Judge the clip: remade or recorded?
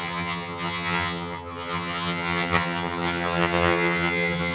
remade